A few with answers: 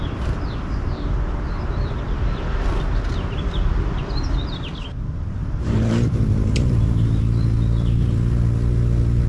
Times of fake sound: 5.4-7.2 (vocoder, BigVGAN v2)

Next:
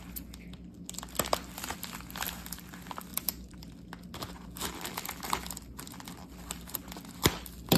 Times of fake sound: 3.1-3.7 (vocoder, BigVGAN v2)

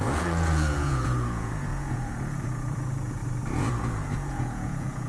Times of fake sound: 0.0-3.2 (vocoder, Vocos); 3.8-5.1